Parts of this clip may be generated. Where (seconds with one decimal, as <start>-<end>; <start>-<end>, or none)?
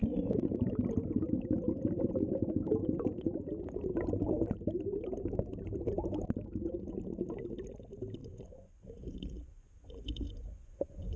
8.2-11.2